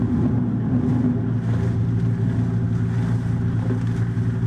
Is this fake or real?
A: real